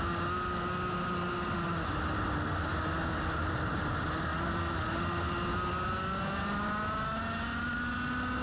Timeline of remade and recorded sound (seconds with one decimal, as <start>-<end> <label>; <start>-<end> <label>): 0.0-8.4 recorded